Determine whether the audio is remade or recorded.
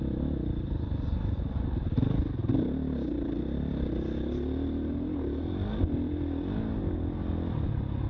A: recorded